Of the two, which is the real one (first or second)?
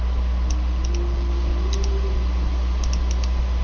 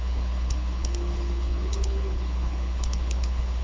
first